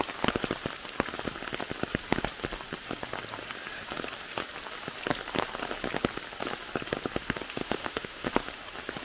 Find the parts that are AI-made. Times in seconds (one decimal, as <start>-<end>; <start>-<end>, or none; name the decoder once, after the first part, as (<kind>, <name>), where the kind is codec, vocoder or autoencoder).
7.6-8.3 (autoencoder, DAC-VAE)